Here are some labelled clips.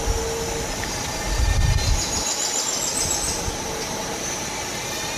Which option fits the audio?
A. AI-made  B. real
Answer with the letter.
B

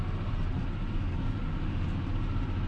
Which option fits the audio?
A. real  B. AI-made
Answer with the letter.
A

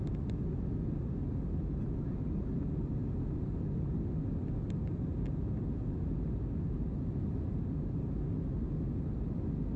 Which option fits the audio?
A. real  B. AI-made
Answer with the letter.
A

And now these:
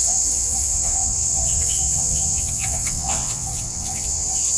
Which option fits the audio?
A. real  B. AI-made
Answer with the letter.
B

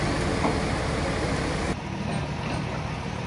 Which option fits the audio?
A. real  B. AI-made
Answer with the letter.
A